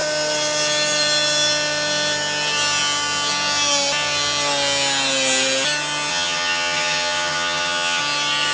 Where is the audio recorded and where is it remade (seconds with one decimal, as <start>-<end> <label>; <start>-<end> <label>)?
0.0-6.1 recorded; 6.1-8.0 remade; 8.0-8.5 recorded